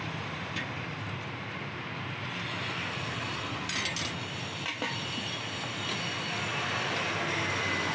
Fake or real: real